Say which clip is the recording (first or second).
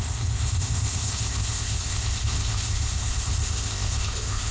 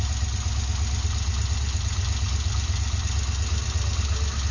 second